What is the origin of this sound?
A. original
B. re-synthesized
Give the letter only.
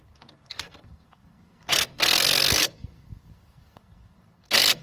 B